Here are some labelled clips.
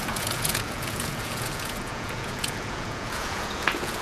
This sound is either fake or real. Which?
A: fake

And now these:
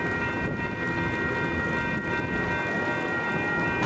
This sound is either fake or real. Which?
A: real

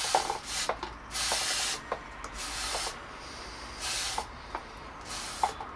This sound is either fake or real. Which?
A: real